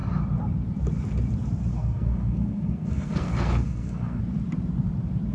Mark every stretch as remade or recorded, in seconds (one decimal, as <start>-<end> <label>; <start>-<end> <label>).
0.0-1.7 recorded; 1.7-4.2 remade; 4.2-5.3 recorded